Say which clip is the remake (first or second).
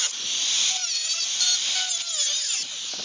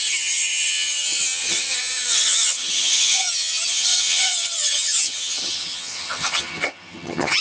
second